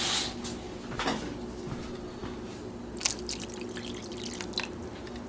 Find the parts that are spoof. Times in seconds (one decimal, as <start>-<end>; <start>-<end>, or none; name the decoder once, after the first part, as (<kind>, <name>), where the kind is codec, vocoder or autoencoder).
none